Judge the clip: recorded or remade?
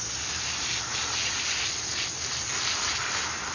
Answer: recorded